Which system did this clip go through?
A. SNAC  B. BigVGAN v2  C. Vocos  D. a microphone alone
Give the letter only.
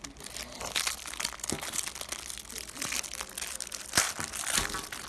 D